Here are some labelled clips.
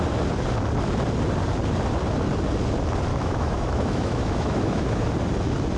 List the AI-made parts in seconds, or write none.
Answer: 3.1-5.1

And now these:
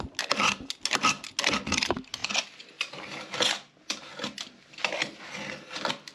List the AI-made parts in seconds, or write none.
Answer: none

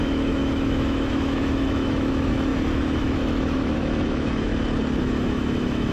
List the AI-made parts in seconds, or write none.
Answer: 0.0-4.5; 5.0-5.9

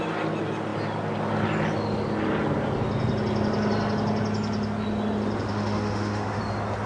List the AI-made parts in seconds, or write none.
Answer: 5.5-6.4

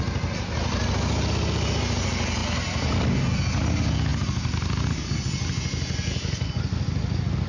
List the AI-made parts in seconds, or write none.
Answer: none

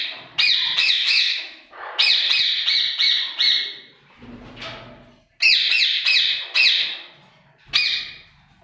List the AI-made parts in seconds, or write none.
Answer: 0.8-1.7